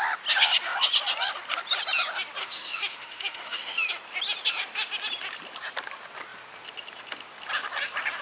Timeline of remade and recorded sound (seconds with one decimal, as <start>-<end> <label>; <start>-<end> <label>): 0.0-2.4 recorded; 2.4-3.9 remade; 3.9-8.2 recorded